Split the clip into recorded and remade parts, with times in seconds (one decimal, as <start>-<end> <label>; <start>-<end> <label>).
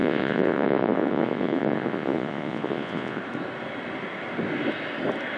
0.0-3.2 remade; 3.2-5.4 recorded